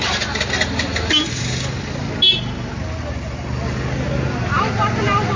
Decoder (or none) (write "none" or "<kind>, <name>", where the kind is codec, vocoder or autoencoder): none